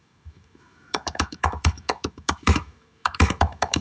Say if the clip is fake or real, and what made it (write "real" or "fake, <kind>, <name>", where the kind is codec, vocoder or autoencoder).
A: fake, autoencoder, DAC-VAE